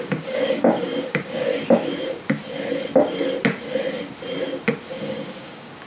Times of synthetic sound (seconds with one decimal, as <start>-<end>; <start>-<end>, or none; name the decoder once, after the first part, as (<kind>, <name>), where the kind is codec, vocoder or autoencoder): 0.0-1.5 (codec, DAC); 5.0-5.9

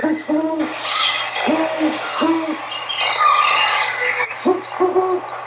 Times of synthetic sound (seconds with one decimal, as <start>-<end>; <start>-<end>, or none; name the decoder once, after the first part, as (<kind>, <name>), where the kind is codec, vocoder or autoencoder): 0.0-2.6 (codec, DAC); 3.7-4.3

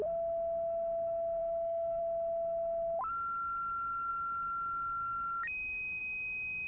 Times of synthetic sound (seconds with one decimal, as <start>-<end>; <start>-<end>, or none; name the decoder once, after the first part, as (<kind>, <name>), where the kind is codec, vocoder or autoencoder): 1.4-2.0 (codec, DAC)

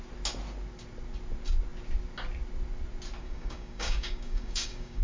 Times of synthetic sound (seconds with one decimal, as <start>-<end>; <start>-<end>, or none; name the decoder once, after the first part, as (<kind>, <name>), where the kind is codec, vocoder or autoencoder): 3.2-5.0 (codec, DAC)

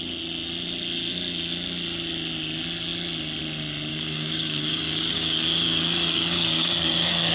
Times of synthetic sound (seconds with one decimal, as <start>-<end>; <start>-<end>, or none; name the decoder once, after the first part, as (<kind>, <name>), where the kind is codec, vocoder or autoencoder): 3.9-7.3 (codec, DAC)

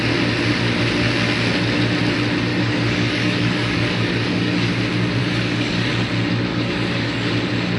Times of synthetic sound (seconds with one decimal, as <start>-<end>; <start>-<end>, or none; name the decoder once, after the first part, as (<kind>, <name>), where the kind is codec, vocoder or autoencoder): 2.5-4.7 (codec, DAC); 5.2-5.9; 6.5-7.3

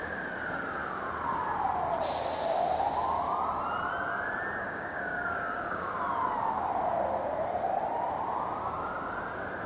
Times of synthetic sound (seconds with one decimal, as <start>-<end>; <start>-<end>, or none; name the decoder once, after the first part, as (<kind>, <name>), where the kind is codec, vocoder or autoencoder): 4.6-5.9 (codec, DAC)